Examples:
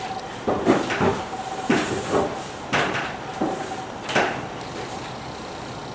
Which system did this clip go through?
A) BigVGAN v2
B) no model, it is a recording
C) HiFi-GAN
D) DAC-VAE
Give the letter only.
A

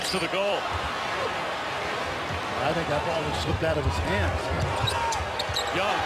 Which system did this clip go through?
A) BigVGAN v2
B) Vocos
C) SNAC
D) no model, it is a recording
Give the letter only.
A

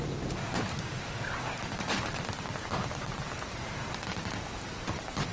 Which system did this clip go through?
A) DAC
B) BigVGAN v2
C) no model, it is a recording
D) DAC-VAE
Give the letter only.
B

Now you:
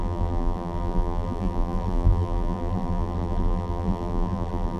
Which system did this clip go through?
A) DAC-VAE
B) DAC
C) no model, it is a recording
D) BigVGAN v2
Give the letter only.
D